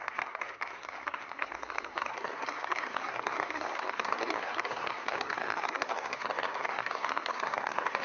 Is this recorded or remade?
remade